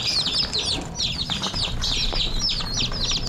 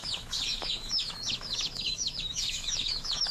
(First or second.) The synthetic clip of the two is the second